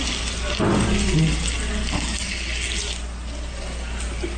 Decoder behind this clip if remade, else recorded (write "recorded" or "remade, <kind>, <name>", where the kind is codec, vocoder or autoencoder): recorded